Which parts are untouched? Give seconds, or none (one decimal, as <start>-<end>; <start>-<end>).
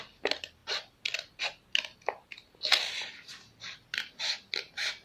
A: 0.6-3.6